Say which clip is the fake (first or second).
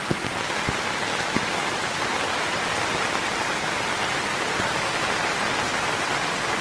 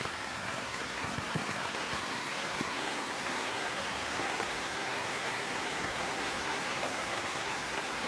second